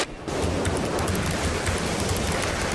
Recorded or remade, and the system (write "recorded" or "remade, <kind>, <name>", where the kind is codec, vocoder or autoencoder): recorded